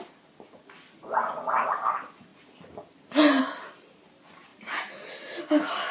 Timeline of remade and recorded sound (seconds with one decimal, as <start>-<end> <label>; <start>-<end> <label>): 0.0-5.9 recorded